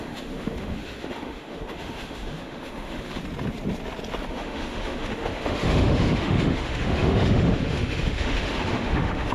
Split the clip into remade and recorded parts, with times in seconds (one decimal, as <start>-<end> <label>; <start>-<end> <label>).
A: 0.0-3.2 remade; 3.2-4.3 recorded; 4.3-9.3 remade